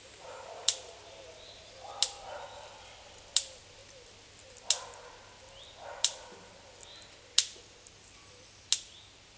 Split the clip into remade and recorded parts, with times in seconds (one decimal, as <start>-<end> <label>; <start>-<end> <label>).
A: 0.0-9.4 recorded

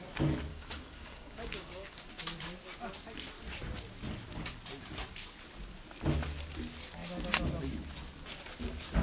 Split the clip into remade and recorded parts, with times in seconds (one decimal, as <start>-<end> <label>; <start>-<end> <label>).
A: 0.0-0.5 recorded; 0.5-2.1 remade; 2.1-9.0 recorded

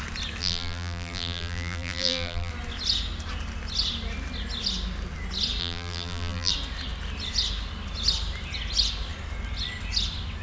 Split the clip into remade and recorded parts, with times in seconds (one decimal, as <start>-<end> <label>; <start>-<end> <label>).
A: 0.0-0.4 recorded; 0.4-2.5 remade; 2.5-5.6 recorded; 5.6-6.5 remade; 6.5-10.4 recorded